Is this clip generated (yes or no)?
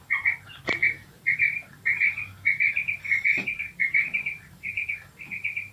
yes